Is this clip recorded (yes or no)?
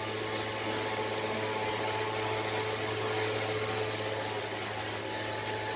yes